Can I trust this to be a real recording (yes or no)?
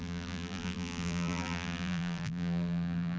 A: no